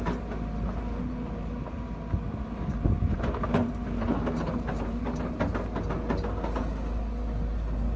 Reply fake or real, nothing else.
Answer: real